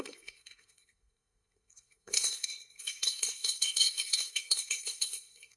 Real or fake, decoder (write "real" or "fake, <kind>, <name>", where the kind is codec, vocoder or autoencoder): fake, codec, SNAC